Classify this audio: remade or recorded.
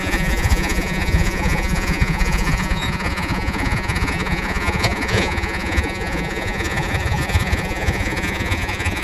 remade